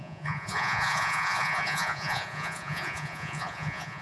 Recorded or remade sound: remade